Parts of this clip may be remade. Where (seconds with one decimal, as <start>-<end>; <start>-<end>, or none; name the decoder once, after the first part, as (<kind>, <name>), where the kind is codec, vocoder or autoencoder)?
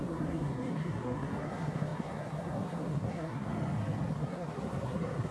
0.0-3.5 (codec, SNAC); 4.1-5.3